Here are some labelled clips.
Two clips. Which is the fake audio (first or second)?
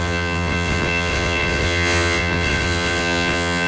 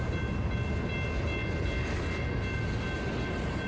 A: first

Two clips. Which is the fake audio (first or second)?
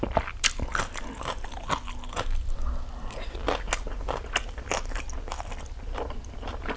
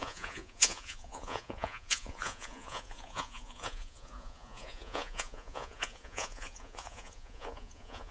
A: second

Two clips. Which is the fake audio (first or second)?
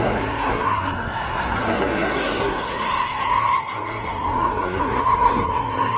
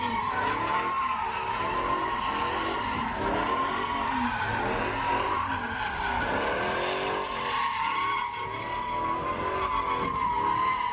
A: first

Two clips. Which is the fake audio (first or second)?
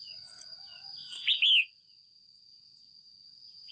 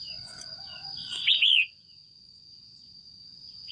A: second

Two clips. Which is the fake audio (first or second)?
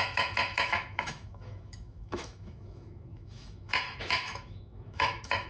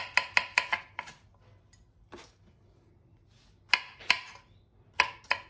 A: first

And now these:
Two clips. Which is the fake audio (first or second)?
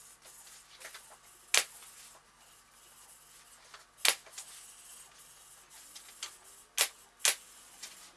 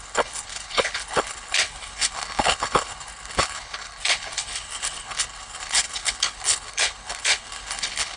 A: second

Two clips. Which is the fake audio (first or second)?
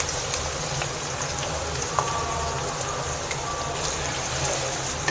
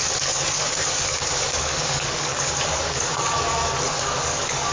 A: second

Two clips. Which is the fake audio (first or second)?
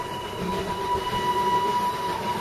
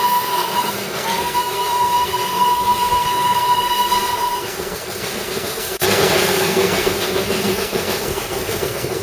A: second